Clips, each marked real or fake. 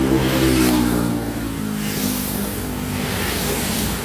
fake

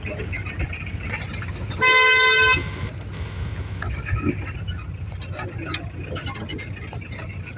real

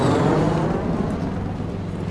real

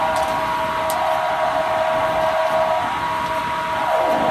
real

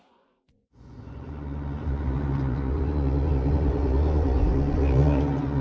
fake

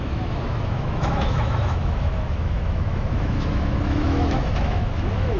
fake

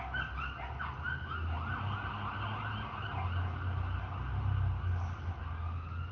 real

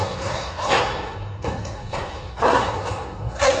fake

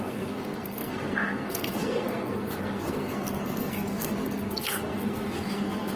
fake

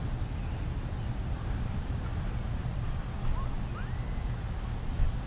real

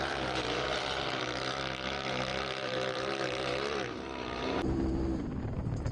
fake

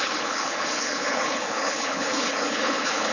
fake